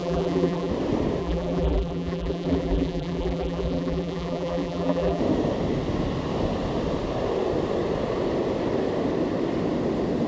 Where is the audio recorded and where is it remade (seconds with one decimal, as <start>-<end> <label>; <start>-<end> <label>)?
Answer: 0.0-0.7 remade; 0.7-1.2 recorded; 1.2-5.2 remade; 5.2-10.3 recorded